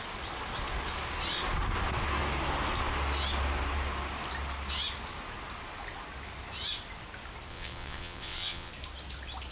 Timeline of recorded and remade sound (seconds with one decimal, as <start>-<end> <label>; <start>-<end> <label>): 0.0-7.5 recorded; 7.5-8.7 remade; 8.7-9.5 recorded